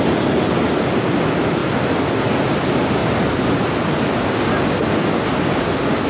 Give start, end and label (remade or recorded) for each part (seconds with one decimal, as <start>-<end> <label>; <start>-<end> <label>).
0.0-3.0 recorded; 3.0-3.7 remade; 3.7-6.1 recorded